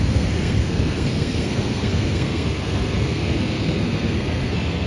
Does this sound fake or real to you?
fake